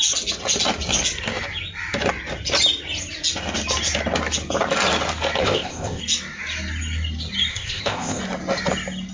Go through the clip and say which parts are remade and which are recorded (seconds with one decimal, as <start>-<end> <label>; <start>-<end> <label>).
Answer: 0.0-5.4 recorded; 5.4-6.0 remade; 6.0-7.5 recorded; 7.5-8.2 remade; 8.2-9.1 recorded

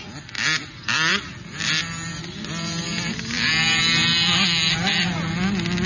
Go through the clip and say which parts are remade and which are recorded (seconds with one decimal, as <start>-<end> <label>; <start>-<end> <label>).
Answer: 0.0-5.9 recorded

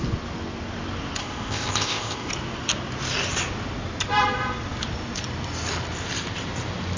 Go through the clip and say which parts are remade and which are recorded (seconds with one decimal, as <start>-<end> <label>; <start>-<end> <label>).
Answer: 0.0-1.2 recorded; 1.2-2.3 remade; 2.3-7.0 recorded

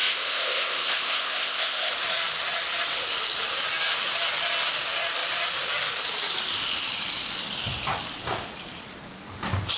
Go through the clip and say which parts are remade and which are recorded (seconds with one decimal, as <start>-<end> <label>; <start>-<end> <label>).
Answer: 0.0-1.9 remade; 1.9-9.8 recorded

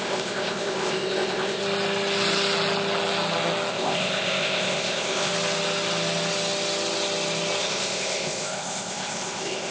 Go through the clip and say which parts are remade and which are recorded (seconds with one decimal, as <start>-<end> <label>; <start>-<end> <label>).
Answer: 0.0-1.6 remade; 1.6-3.7 recorded; 3.7-5.3 remade; 5.3-7.6 recorded; 7.6-9.7 remade

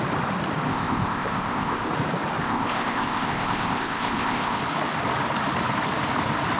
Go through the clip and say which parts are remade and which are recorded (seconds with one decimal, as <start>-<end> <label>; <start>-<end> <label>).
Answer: 0.0-0.7 recorded; 0.7-1.9 remade; 1.9-2.4 recorded; 2.4-4.6 remade; 4.6-6.6 recorded

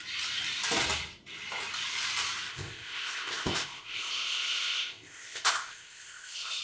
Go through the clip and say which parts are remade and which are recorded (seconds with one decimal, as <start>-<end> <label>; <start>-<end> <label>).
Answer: 0.0-2.5 recorded; 2.5-6.6 remade